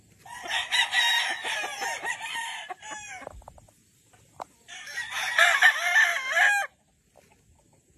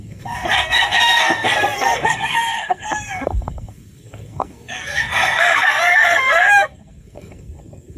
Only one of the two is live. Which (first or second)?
first